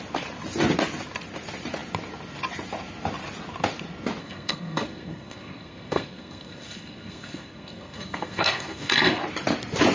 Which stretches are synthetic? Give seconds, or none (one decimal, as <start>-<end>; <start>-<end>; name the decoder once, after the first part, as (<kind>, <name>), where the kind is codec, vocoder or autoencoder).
4.2-9.2 (codec, SNAC)